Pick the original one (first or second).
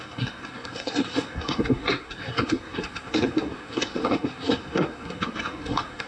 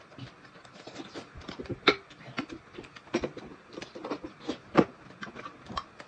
second